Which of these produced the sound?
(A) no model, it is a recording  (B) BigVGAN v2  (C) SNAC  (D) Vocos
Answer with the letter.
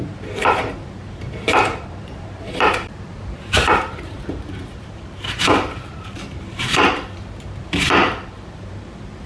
B